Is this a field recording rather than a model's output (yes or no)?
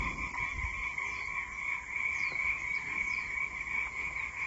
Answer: yes